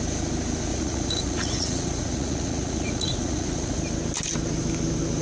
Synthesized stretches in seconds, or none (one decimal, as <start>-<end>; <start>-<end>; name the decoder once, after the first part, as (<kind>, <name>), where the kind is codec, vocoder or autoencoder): 0.7-3.8 (vocoder, Vocos)